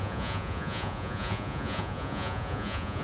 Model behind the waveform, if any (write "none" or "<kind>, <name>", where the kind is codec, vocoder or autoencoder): vocoder, Vocos